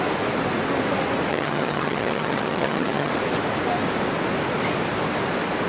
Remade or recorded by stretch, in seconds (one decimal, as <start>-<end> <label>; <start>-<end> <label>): 0.0-1.3 recorded; 1.3-3.1 remade; 3.1-5.7 recorded